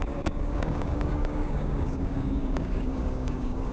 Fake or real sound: fake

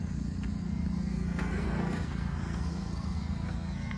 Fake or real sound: fake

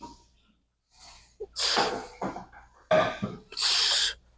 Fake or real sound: real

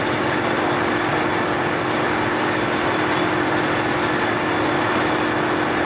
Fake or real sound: real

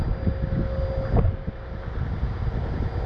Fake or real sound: real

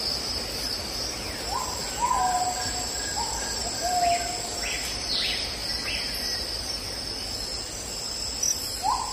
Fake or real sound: real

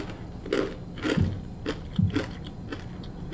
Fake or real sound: real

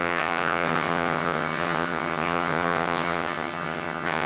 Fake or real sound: fake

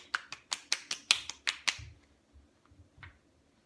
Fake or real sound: real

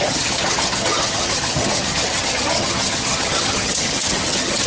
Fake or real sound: fake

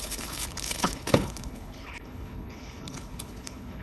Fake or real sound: fake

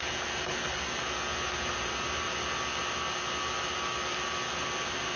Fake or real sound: real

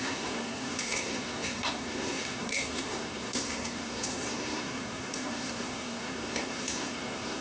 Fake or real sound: fake